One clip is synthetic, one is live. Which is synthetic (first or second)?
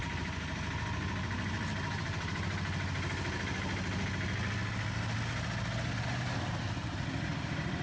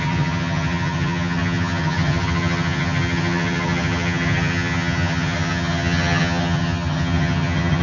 second